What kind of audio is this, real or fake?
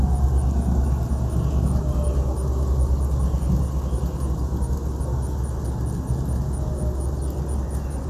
real